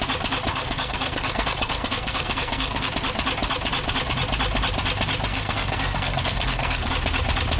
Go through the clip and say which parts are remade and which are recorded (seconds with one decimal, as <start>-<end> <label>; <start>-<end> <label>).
0.0-0.5 recorded; 0.5-2.9 remade; 2.9-5.3 recorded; 5.3-6.9 remade; 6.9-7.6 recorded